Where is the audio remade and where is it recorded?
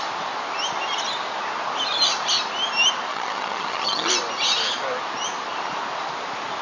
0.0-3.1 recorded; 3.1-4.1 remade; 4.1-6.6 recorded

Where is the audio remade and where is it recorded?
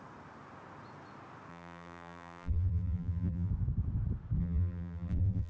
0.0-1.5 recorded; 1.5-3.5 remade; 3.5-4.4 recorded; 4.4-5.5 remade